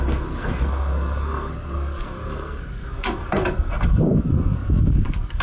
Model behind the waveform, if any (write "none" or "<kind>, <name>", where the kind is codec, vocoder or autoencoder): codec, SNAC